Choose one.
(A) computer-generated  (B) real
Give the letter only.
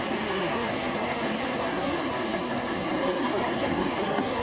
A